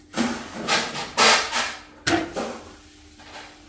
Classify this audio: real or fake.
real